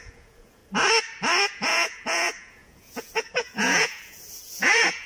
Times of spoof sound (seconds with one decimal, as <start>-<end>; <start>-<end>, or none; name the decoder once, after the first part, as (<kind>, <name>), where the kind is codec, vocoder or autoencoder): 0.0-0.6 (vocoder, Vocos); 1.5-5.1